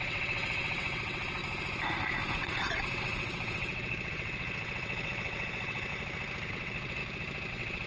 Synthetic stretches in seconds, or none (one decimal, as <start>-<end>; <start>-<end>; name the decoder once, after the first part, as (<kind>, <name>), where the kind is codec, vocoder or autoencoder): 0.0-1.4 (vocoder, WaveNeXt); 2.3-5.9; 6.5-7.0; 7.5-7.9